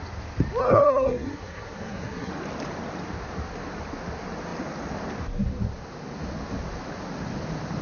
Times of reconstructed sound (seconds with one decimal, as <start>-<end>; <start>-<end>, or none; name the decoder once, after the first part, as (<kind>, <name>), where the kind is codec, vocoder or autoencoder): 0.6-2.3 (codec, SNAC)